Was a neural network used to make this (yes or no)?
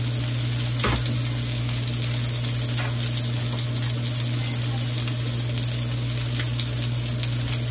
no